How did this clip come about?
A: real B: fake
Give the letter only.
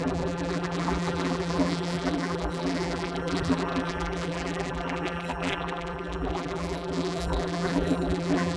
B